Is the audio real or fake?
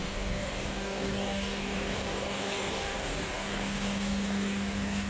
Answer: fake